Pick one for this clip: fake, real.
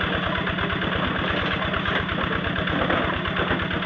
real